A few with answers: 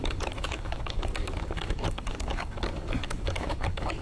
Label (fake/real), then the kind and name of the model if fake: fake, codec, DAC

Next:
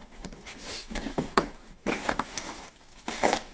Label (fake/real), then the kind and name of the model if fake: fake, codec, DAC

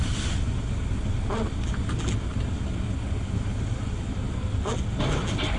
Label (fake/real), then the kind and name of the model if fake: real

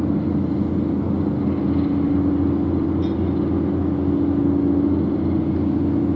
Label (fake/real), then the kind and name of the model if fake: real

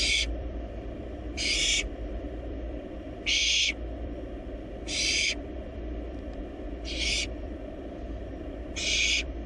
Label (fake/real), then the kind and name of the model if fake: fake, vocoder, BigVGAN v2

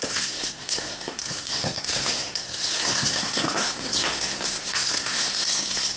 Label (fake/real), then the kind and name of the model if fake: fake, codec, SNAC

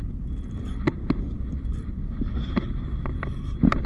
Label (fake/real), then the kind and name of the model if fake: real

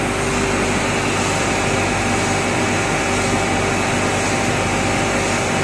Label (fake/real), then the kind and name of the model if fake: real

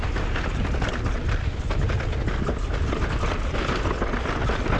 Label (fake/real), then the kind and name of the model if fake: real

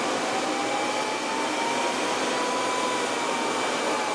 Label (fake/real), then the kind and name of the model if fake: real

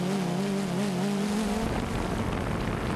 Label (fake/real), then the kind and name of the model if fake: real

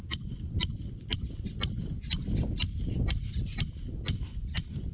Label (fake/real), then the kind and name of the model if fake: real